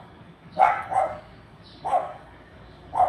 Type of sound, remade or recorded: remade